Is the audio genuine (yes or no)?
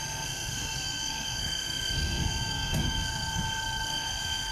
no